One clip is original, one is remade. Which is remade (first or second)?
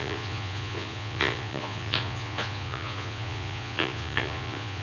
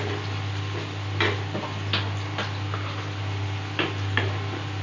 first